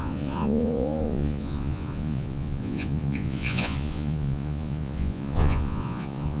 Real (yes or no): no